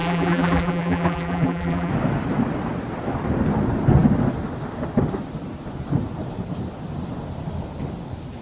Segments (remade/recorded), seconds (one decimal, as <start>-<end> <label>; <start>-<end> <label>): 0.0-1.9 remade; 1.9-8.4 recorded